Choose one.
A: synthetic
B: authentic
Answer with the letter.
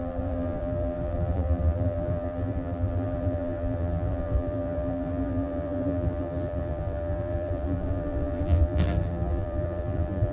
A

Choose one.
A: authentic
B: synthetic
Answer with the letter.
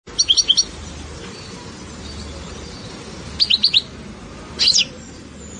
A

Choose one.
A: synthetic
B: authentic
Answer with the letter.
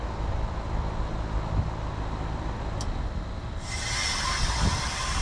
B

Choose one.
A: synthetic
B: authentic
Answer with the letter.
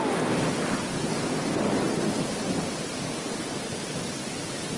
A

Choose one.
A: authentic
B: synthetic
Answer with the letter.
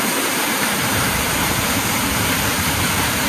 B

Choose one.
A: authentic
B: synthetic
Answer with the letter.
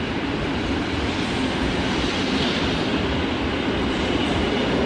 A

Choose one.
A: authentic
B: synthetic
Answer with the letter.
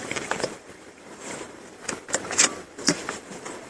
B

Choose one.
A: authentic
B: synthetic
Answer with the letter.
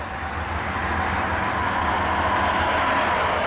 A